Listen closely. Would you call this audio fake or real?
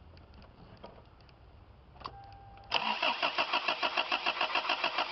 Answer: real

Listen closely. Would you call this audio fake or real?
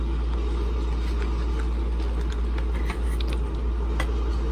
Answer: real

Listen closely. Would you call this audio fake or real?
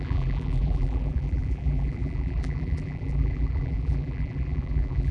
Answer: fake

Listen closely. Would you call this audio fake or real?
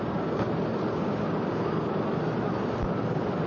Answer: real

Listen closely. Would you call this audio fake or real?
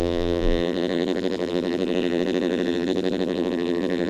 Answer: fake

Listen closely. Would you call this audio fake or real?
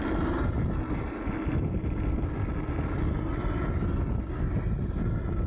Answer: real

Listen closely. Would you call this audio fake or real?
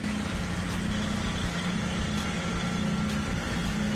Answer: real